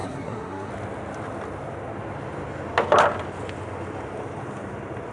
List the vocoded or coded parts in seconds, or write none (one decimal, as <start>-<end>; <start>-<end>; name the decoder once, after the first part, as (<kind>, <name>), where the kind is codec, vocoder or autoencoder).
0.0-0.7 (codec, SNAC)